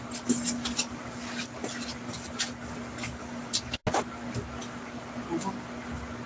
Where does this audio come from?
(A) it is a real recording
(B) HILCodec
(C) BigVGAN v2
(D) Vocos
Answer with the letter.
A